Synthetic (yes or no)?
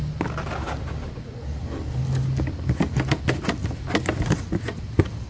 no